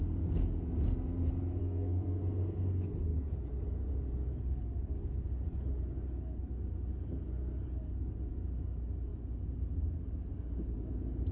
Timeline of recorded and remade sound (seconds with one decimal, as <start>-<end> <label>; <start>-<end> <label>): 0.0-1.6 recorded; 1.6-2.2 remade; 2.2-11.3 recorded

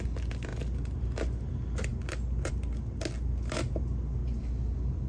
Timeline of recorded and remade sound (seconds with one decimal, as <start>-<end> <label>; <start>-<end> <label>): 0.0-5.1 recorded

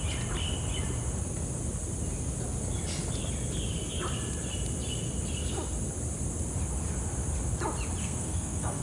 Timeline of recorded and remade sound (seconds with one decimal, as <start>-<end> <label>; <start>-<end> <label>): 0.0-8.0 recorded; 8.0-8.8 remade

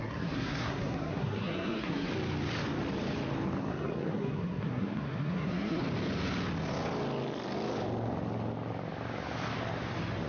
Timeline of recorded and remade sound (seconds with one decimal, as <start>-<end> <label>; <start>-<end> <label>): 0.0-2.1 remade; 2.1-3.6 recorded; 3.6-5.8 remade; 5.8-10.3 recorded

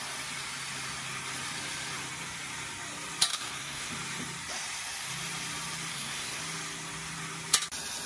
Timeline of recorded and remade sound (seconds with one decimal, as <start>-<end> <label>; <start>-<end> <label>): 0.0-3.3 recorded; 3.3-3.9 remade; 3.9-5.9 recorded; 5.9-6.4 remade; 6.4-8.1 recorded